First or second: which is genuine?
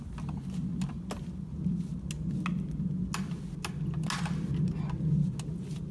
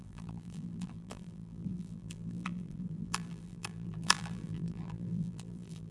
first